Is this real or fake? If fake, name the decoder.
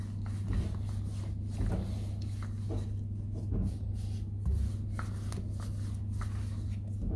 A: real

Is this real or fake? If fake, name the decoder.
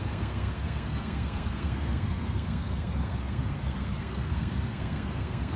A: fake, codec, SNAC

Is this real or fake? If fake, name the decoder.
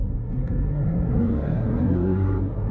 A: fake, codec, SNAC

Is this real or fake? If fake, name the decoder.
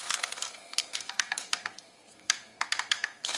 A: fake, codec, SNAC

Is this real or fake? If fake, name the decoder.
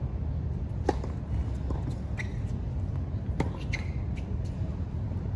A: real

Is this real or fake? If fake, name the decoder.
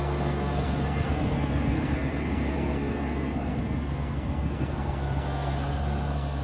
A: fake, codec, SNAC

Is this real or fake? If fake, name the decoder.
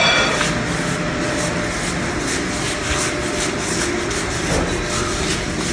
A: real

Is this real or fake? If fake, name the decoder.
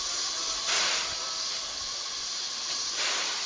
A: real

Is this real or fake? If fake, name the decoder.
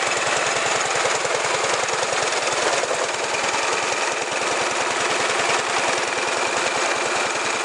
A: real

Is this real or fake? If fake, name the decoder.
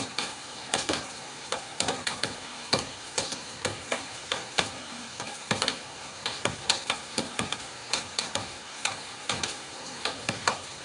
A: fake, codec, SNAC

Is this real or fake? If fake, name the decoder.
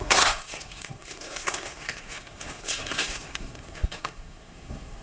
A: fake, codec, SNAC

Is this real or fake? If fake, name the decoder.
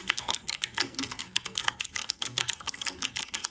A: fake, codec, SNAC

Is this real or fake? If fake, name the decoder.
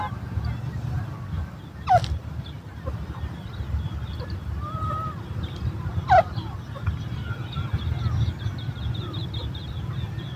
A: real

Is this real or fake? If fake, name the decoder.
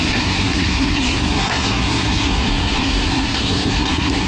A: fake, codec, SNAC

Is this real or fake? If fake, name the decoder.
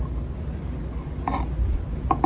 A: real